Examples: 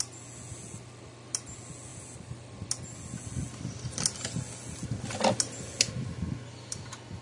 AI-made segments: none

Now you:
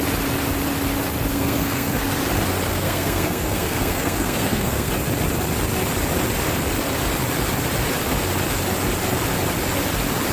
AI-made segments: 1.3-2.1 (codec, SNAC); 2.7-4.9

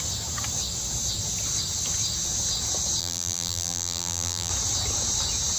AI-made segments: 3.0-4.5 (vocoder, BigVGAN v2)

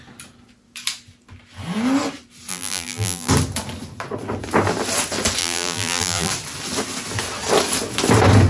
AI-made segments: 2.5-3.3 (vocoder, BigVGAN v2); 5.4-6.3

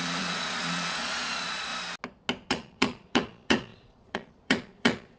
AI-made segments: 0.0-1.7 (vocoder, Vocos); 2.5-5.2